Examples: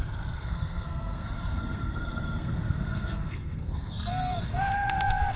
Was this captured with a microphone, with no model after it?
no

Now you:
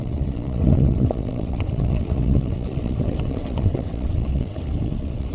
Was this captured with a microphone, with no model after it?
no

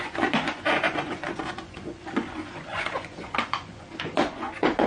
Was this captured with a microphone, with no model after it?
no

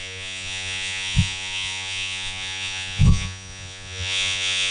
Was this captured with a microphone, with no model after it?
no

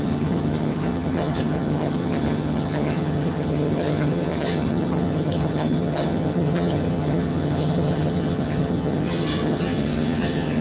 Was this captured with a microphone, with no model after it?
no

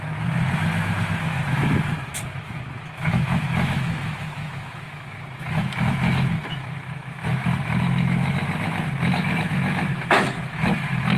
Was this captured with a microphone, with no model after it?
no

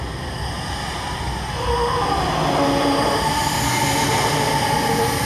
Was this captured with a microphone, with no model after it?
yes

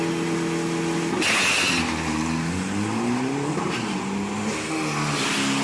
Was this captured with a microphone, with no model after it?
yes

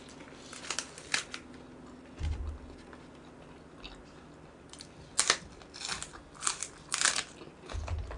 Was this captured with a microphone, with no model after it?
yes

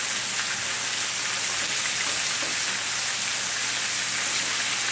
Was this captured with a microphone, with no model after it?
yes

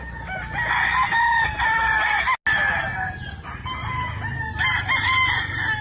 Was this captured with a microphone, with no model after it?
yes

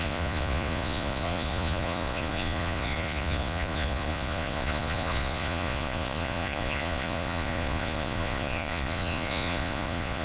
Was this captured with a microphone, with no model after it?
no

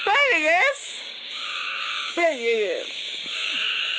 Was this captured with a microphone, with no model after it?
no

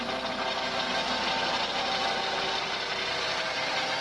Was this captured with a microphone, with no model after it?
yes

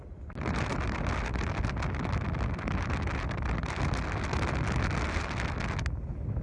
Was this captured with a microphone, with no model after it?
yes